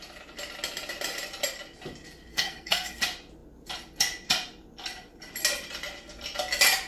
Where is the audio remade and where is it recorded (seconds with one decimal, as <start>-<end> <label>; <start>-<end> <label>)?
0.0-2.3 recorded; 2.3-3.0 remade; 3.0-6.9 recorded